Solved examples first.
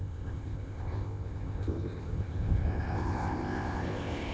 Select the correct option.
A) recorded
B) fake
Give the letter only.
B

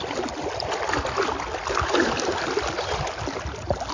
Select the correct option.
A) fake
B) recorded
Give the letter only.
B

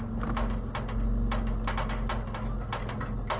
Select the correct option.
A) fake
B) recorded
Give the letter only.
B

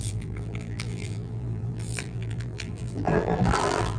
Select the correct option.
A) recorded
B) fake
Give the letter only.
B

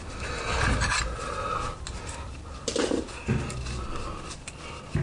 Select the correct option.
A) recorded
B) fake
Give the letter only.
A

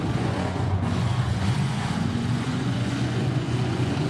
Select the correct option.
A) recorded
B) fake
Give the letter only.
B